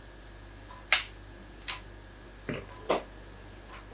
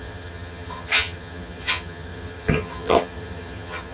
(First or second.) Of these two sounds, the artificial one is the second